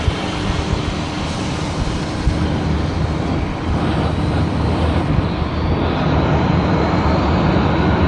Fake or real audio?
real